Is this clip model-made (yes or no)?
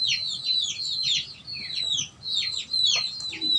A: no